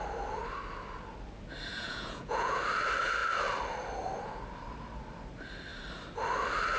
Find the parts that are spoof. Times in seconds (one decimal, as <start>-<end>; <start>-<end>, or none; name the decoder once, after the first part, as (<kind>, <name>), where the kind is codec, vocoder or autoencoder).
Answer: 1.7-2.6 (vocoder, Vocos)